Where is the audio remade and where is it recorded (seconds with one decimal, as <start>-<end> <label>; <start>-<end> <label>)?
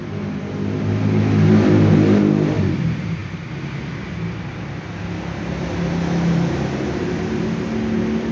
0.0-8.3 recorded